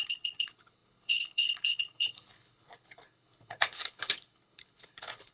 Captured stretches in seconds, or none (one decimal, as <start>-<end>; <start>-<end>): none